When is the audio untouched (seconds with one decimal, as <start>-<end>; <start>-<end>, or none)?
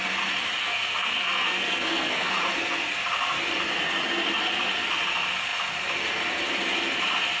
0.0-0.6; 2.3-7.4